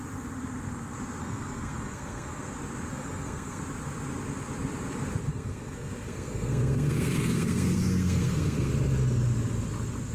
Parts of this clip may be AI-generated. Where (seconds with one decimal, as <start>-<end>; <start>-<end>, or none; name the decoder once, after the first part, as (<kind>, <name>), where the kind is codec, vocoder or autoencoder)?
1.2-2.5 (codec, SNAC); 2.9-3.6; 5.3-8.7